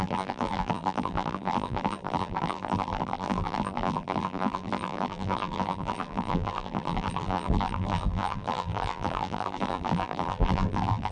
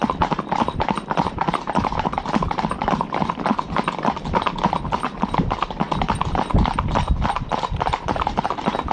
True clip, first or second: second